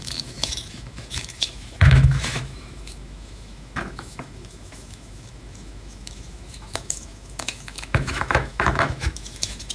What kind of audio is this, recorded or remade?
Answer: remade